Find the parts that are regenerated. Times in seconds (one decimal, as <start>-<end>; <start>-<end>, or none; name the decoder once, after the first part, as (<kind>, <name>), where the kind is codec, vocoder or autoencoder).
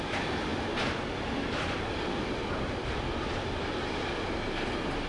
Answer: none